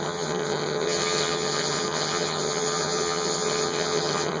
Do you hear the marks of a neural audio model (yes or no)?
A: yes